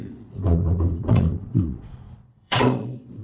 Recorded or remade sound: remade